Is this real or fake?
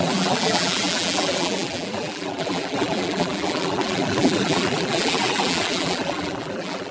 fake